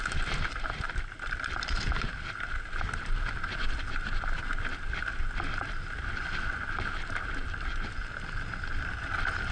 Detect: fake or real real